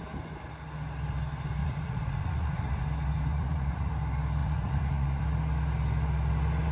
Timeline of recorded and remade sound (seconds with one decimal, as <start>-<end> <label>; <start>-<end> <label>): 0.0-1.6 recorded; 1.6-2.8 remade; 2.8-3.3 recorded; 3.3-3.9 remade; 3.9-4.4 recorded; 4.4-5.2 remade; 5.2-6.7 recorded